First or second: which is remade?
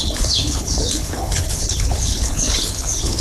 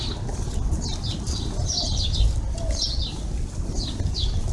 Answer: first